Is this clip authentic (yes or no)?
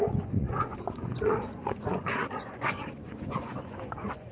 no